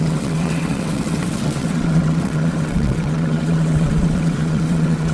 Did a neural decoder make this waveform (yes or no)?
yes